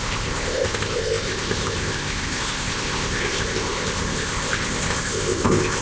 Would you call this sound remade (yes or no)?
yes